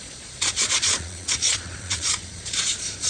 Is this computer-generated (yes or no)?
yes